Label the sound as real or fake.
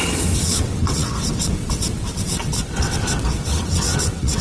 fake